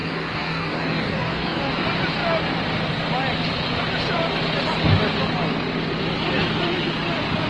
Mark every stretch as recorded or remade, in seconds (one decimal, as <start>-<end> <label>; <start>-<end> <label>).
0.0-1.6 remade; 1.6-7.5 recorded